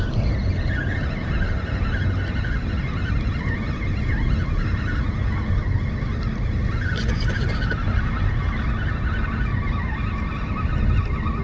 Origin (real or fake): real